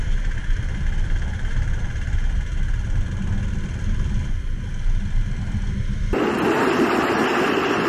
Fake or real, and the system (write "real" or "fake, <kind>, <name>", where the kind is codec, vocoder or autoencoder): real